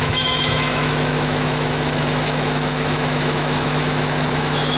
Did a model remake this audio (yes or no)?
yes